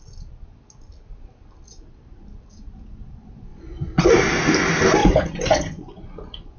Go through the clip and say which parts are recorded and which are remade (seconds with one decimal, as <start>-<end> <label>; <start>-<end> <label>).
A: 0.0-3.5 recorded; 3.5-4.1 remade; 4.1-5.0 recorded; 5.0-6.6 remade